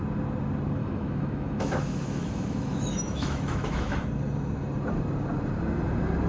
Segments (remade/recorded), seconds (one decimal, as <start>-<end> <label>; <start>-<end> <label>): 0.0-0.8 recorded; 0.8-4.1 remade; 4.1-6.3 recorded